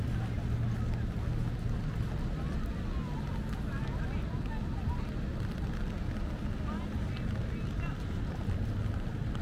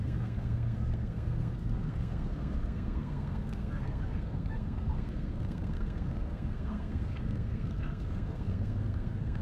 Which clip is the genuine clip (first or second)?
first